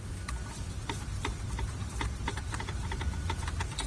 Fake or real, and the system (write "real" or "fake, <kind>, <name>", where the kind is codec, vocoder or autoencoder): fake, vocoder, BigVGAN v2